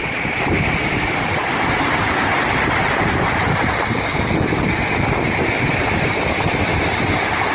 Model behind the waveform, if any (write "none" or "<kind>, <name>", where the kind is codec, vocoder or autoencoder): none